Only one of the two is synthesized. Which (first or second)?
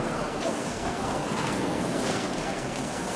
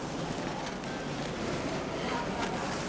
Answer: first